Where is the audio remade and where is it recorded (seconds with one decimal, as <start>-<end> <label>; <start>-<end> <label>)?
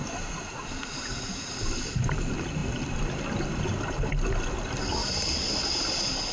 0.0-6.3 recorded